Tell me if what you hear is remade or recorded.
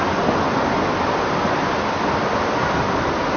recorded